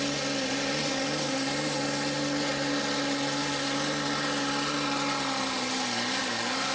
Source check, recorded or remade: recorded